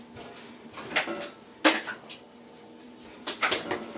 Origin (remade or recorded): recorded